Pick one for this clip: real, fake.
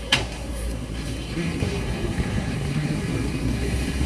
fake